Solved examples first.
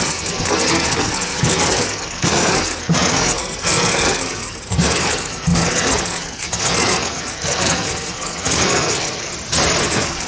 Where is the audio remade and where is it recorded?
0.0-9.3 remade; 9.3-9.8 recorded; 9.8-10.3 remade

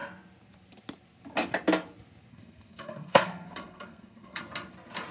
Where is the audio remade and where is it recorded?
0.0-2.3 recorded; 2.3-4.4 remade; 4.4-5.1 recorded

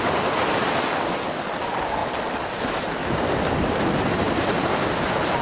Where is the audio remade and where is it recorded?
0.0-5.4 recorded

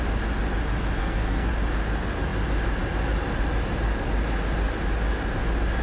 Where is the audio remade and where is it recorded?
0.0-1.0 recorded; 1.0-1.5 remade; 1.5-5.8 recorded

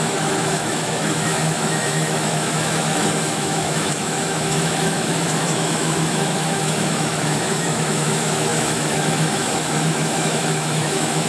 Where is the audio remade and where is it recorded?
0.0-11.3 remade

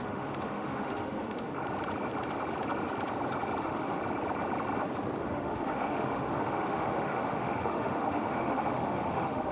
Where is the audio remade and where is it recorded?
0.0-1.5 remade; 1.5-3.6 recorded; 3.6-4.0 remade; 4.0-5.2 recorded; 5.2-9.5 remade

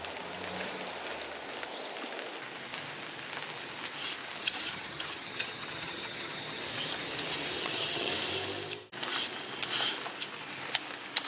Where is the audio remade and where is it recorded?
0.0-4.4 recorded; 4.4-6.6 remade; 6.6-7.6 recorded; 7.6-8.1 remade; 8.1-11.3 recorded

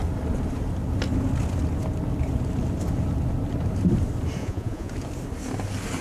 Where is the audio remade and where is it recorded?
0.0-4.4 recorded; 4.4-4.9 remade; 4.9-6.0 recorded